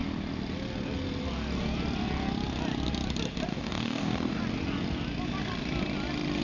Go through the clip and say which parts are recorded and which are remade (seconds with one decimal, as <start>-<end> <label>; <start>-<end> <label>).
0.0-3.5 recorded; 3.5-4.4 remade; 4.4-6.4 recorded

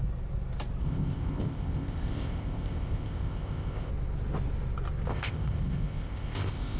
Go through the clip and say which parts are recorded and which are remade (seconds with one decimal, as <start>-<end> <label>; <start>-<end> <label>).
0.0-0.8 recorded; 0.8-3.9 remade; 3.9-5.1 recorded; 5.1-6.8 remade